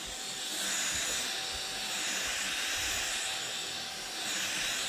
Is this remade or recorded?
recorded